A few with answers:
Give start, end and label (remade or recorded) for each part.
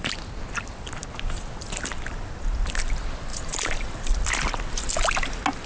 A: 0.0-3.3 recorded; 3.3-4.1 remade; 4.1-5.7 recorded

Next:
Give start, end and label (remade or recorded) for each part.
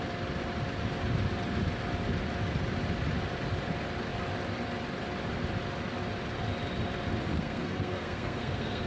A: 0.0-7.3 recorded; 7.3-8.9 remade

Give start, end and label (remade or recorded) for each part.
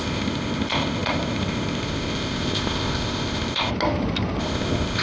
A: 0.0-3.7 remade; 3.7-4.4 recorded; 4.4-5.0 remade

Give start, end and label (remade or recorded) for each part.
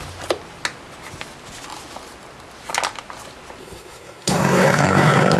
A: 0.0-3.6 recorded; 3.6-5.4 remade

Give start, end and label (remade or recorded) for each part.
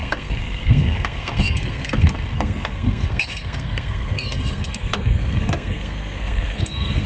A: 0.0-7.1 remade